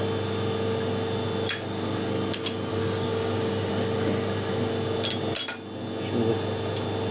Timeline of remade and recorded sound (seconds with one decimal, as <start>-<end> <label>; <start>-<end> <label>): 0.0-2.7 recorded; 2.7-3.7 remade; 3.7-7.1 recorded